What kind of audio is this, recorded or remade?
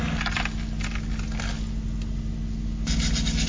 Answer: recorded